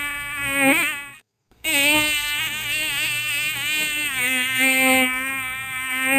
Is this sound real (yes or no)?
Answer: no